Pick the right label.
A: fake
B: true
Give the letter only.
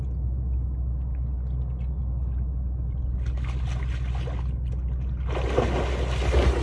B